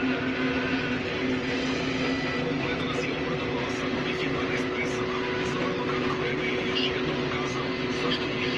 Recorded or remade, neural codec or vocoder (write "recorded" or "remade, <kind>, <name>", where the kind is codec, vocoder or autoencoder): recorded